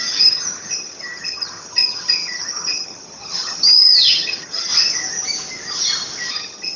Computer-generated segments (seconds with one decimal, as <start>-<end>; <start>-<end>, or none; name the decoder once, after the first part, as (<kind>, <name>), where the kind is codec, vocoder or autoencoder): 0.0-4.7 (vocoder, HiFi-GAN); 6.3-6.8